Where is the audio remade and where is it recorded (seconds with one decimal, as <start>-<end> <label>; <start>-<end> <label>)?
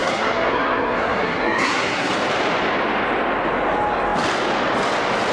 0.0-2.1 remade; 2.1-5.3 recorded